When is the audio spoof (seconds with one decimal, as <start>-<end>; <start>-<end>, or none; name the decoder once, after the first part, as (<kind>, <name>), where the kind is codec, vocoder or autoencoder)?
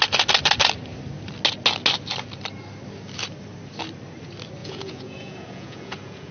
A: 4.6-6.3 (vocoder, Vocos)